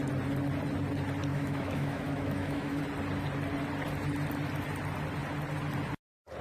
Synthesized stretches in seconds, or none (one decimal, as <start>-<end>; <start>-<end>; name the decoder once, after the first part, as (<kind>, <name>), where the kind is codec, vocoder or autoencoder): 1.3-2.8 (autoencoder, DAC-VAE)